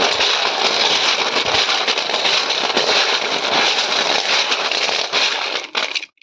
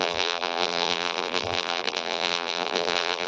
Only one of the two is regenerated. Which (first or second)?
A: second